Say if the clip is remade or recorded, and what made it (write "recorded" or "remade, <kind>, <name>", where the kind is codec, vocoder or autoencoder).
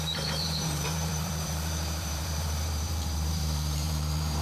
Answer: remade, vocoder, BigVGAN v2